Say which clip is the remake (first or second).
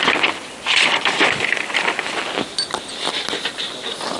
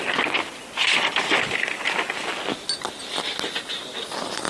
first